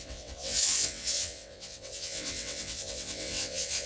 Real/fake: fake